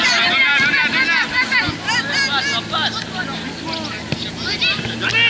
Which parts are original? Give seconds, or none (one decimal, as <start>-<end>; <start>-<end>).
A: 0.0-5.3